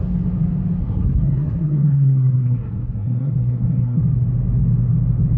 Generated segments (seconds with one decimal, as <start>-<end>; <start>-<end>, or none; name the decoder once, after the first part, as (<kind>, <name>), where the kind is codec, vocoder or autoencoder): 0.8-4.0 (codec, SNAC)